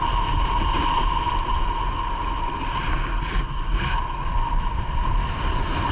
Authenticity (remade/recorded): recorded